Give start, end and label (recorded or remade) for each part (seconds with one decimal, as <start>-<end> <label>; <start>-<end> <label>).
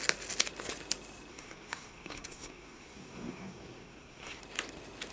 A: 0.0-1.3 recorded; 1.3-4.4 remade; 4.4-5.1 recorded